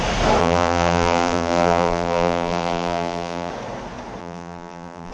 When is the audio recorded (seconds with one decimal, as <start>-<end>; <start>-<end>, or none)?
0.0-0.4; 3.5-4.2